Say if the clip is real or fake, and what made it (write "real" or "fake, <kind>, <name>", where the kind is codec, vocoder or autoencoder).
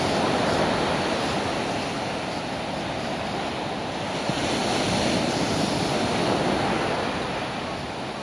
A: real